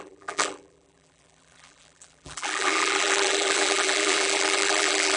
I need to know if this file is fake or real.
fake